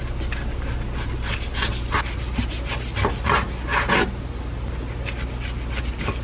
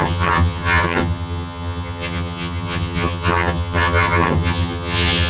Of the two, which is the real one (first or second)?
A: first